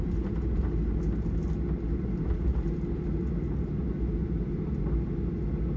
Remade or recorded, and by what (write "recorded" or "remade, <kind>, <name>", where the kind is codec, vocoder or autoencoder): recorded